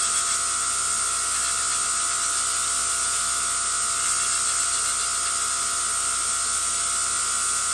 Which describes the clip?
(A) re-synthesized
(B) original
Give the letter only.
B